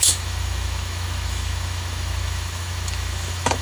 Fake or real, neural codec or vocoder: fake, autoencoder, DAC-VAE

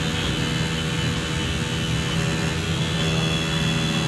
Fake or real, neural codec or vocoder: real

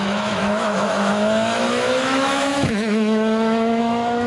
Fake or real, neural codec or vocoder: fake, autoencoder, DAC-VAE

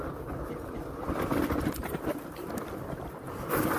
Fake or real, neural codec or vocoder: real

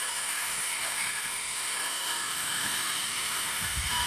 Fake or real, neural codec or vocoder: fake, autoencoder, DAC-VAE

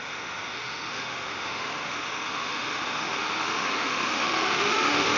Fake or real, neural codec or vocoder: fake, autoencoder, DAC-VAE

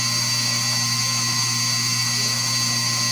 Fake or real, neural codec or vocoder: fake, autoencoder, DAC-VAE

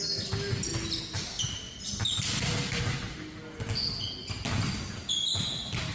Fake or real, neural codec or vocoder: real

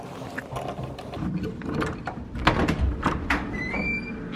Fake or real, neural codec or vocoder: real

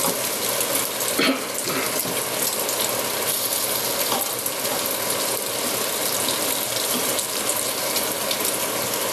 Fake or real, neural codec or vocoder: real